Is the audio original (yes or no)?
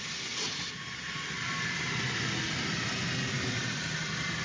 yes